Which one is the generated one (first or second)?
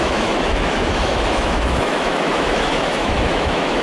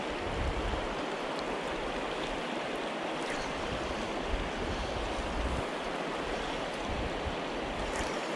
first